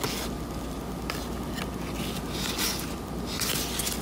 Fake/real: real